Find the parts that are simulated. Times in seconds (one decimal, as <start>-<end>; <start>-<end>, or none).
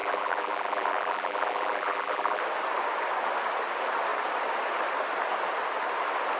0.0-2.4